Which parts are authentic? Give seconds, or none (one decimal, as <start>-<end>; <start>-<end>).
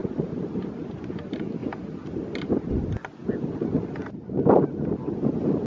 0.0-0.9; 1.6-2.5; 3.2-3.7